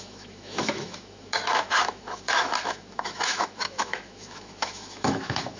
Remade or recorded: remade